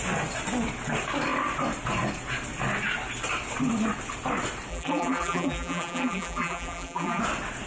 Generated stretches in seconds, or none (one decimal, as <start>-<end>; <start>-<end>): 4.7-7.2